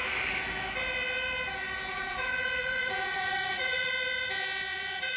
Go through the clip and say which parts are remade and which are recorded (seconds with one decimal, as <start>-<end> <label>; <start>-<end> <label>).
0.0-1.9 recorded; 1.9-3.9 remade; 3.9-4.7 recorded; 4.7-5.2 remade